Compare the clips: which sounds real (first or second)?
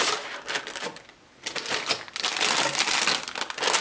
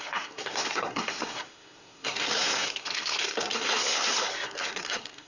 first